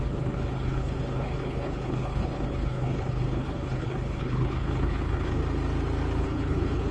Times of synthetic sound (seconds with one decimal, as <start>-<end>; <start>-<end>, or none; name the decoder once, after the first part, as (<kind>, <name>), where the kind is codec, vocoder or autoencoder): 0.0-5.4 (codec, HILCodec); 6.2-6.9